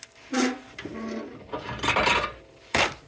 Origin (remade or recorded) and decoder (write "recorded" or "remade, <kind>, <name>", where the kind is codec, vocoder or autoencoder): recorded